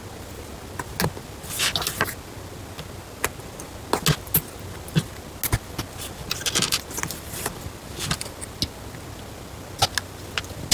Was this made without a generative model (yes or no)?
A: yes